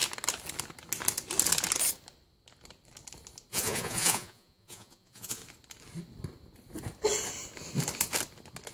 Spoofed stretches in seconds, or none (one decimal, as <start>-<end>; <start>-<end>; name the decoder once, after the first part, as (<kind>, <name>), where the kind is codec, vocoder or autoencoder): 3.5-5.4 (vocoder, Vocos)